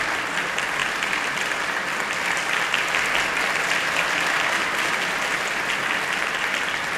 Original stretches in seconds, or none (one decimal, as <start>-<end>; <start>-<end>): 0.0-7.0